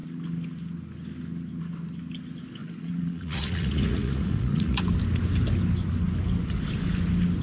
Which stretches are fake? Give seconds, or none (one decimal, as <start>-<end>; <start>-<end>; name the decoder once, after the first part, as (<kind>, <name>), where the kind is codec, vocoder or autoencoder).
2.6-4.8 (vocoder, Vocos)